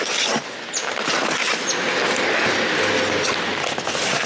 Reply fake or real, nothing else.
real